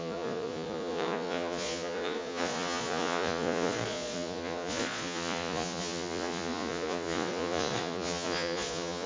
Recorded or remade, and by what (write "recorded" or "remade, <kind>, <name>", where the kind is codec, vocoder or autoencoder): remade, vocoder, Vocos